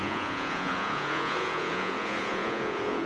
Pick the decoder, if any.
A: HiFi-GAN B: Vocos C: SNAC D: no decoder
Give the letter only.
B